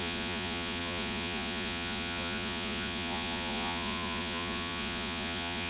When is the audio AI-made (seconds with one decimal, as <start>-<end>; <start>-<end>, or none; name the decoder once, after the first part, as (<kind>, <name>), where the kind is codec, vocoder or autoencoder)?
0.0-5.7 (vocoder, Vocos)